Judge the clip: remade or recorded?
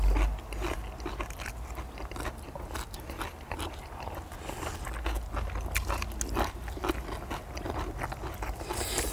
recorded